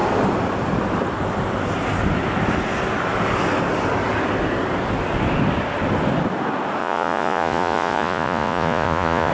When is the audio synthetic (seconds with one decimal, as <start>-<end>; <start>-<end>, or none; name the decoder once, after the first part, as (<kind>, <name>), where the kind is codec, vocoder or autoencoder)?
6.8-9.3 (vocoder, Vocos)